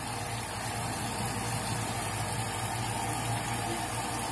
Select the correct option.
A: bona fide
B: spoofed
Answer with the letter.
A